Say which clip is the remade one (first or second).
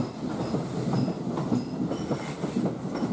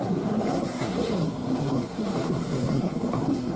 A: second